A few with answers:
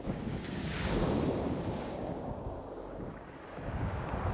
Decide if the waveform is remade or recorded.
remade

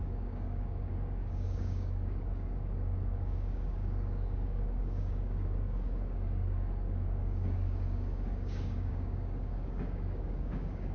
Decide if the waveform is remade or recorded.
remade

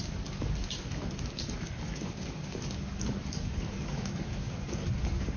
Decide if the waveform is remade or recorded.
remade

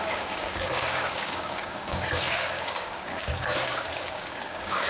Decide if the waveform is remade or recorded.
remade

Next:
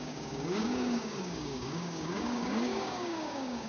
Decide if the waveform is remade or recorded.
remade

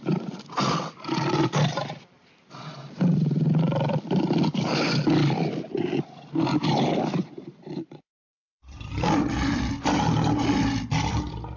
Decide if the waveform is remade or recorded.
recorded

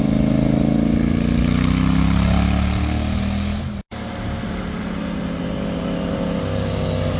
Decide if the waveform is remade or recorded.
recorded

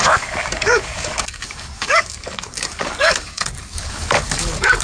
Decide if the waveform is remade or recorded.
remade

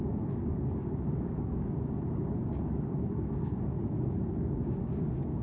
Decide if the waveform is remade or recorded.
remade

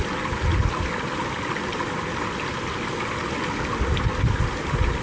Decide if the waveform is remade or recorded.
recorded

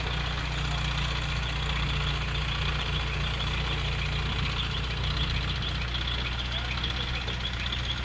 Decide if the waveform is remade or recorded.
recorded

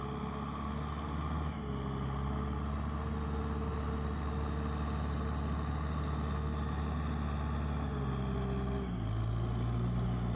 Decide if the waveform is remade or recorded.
recorded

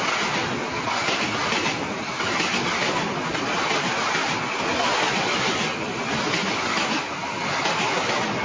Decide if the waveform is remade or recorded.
recorded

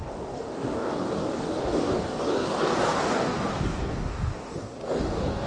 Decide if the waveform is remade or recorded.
remade